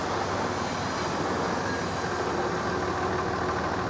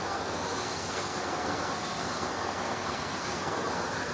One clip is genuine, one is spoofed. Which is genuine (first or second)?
first